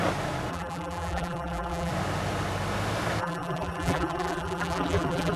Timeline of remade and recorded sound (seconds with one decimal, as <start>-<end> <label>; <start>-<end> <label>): 0.0-0.5 recorded; 0.5-1.9 remade; 1.9-3.2 recorded; 3.2-5.4 remade